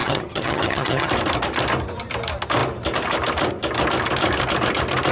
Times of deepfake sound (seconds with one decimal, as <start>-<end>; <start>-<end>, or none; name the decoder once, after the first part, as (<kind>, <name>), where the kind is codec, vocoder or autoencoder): 0.0-1.1 (vocoder, HiFi-GAN)